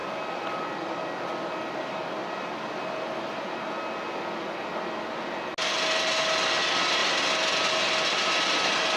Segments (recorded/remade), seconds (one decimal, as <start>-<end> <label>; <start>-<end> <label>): 0.0-9.0 recorded